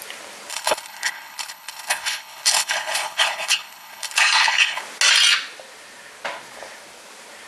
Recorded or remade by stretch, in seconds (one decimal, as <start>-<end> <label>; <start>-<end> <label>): 0.0-0.5 recorded; 0.5-4.8 remade; 4.8-7.5 recorded